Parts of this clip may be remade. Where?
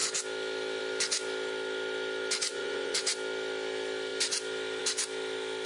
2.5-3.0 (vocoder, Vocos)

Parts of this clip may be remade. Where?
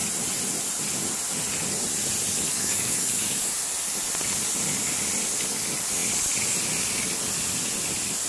2.5-3.6 (codec, DAC)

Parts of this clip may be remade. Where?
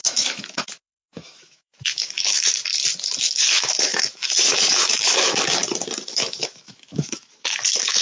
0.0-2.6 (autoencoder, DAC-VAE); 3.2-5.6; 6.1-8.0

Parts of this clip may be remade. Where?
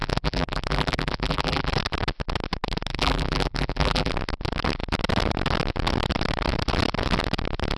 0.0-1.7 (vocoder, BigVGAN v2); 2.9-4.1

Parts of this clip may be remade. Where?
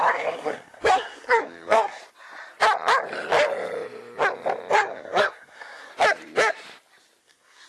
0.0-2.0 (codec, SNAC); 4.7-5.9; 7.2-7.7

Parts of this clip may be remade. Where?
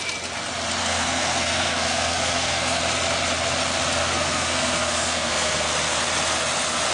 0.8-2.8 (codec, SNAC); 4.0-5.7